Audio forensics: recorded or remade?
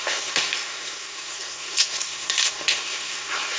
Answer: remade